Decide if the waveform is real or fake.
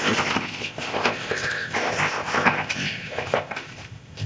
fake